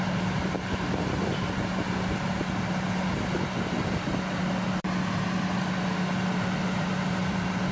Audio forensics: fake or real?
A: real